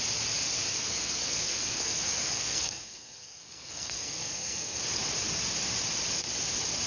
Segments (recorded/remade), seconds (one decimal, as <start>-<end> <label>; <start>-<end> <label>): 0.0-0.7 recorded; 0.7-4.8 remade; 4.8-6.9 recorded